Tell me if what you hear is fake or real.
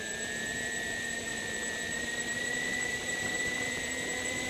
fake